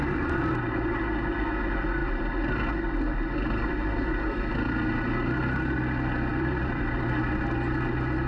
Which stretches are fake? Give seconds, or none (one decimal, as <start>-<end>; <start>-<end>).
6.3-7.1